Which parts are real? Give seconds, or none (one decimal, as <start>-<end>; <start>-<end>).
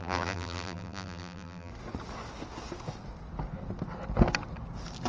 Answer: 1.7-5.1